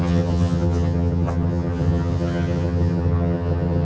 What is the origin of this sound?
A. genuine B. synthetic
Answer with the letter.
B